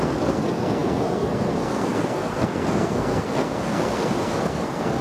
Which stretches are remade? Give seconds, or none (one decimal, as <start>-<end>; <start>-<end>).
0.0-5.0